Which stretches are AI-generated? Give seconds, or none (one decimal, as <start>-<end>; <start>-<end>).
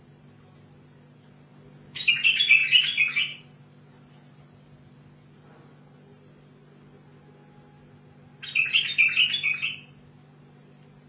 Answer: 0.0-1.5; 2.1-2.6; 3.4-6.6; 10.4-11.1